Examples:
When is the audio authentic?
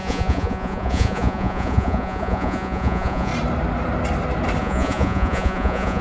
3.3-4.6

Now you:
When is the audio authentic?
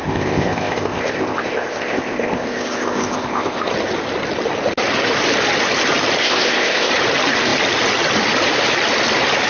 3.7-6.2; 6.9-9.5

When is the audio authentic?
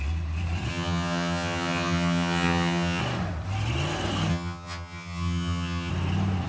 0.0-0.7; 3.0-4.3; 5.9-6.5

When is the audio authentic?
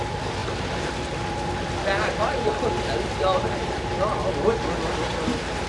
0.0-5.7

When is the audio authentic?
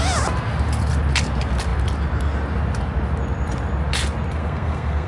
0.0-4.4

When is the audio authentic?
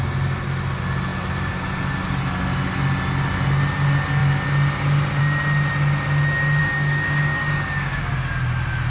0.0-6.6; 8.1-8.9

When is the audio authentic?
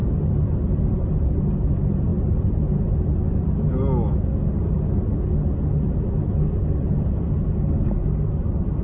0.0-8.8